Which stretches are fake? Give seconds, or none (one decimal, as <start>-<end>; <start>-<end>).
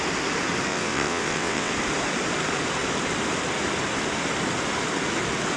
0.7-1.7